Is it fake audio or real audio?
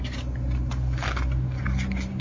real